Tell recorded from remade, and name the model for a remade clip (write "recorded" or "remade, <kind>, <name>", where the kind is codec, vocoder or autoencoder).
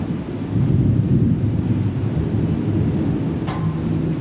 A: recorded